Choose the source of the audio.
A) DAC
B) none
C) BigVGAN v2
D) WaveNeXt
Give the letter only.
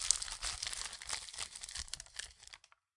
B